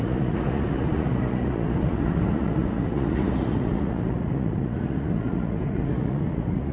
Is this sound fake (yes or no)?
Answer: yes